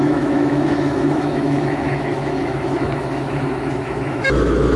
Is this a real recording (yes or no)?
no